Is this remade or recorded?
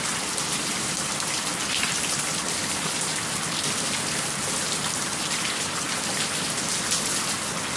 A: recorded